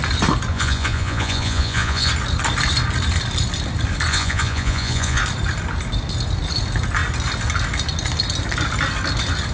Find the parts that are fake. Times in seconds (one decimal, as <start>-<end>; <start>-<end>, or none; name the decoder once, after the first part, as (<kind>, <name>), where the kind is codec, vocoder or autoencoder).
0.5-2.1 (vocoder, Vocos); 4.1-5.2